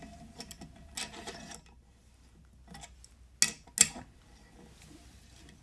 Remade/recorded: recorded